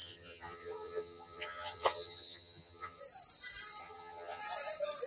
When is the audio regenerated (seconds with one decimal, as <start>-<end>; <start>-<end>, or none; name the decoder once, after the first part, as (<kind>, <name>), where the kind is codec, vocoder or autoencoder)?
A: 0.0-3.0 (vocoder, HiFi-GAN); 3.8-4.4